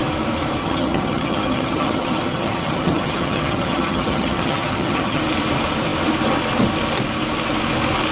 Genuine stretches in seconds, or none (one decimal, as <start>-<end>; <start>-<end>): 0.0-0.6; 5.2-8.1